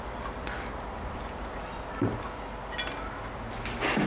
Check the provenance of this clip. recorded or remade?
recorded